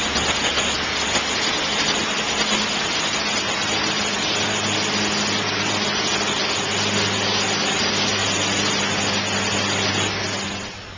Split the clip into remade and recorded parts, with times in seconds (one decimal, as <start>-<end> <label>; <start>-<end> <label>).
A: 0.0-11.0 recorded

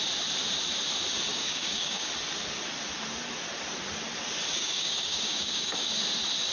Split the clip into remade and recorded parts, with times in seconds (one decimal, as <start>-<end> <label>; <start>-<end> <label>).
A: 0.0-1.3 recorded; 1.3-2.1 remade; 2.1-4.6 recorded; 4.6-5.9 remade; 5.9-6.5 recorded

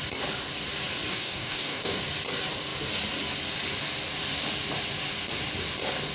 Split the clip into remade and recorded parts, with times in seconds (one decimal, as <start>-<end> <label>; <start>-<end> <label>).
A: 0.0-1.1 recorded; 1.1-2.0 remade; 2.0-6.1 recorded